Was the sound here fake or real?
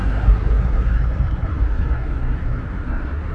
fake